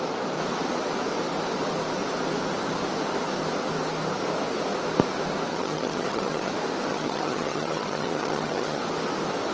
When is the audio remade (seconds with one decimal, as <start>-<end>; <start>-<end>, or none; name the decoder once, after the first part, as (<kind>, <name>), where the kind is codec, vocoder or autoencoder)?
5.5-6.5 (vocoder, HiFi-GAN); 6.9-8.8